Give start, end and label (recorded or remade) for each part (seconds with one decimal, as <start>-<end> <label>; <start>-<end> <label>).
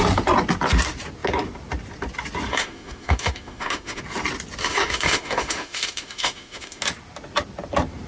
0.0-2.5 recorded; 2.5-4.0 remade; 4.0-4.6 recorded; 4.6-6.8 remade; 6.8-8.1 recorded